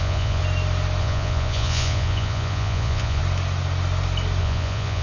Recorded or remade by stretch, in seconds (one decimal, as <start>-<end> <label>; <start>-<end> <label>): 0.0-0.4 remade; 0.4-1.0 recorded; 1.0-3.2 remade; 3.2-4.4 recorded; 4.4-5.0 remade